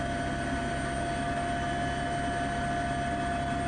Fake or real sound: real